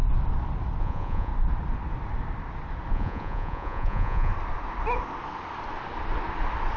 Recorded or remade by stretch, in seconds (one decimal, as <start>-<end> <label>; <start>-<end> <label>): 0.0-0.8 recorded; 0.8-1.3 remade; 1.3-2.9 recorded; 2.9-4.3 remade; 4.3-6.8 recorded